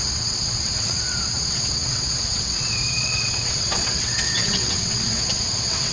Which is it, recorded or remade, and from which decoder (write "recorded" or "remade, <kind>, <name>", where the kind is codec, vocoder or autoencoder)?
remade, vocoder, WaveNeXt